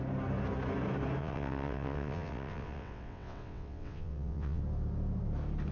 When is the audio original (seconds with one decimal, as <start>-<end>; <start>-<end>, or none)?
0.0-1.2; 4.6-5.7